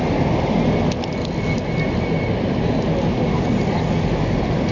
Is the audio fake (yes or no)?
no